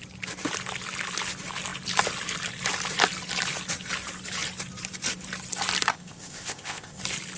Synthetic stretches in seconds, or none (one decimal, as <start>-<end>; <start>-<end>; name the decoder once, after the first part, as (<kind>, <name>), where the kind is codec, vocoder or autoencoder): 5.9-7.0 (codec, ZipCodec)